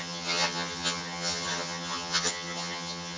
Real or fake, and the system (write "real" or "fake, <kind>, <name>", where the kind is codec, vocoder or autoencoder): fake, vocoder, HiFi-GAN